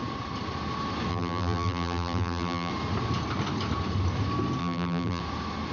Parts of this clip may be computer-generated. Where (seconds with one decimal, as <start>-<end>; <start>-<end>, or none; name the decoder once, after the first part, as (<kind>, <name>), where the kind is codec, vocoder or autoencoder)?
1.1-2.7 (vocoder, BigVGAN v2); 4.6-5.2